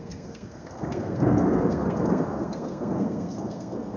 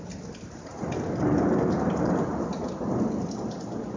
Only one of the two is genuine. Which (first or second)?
second